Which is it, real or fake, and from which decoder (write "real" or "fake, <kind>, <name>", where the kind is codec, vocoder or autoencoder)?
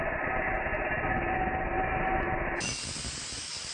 real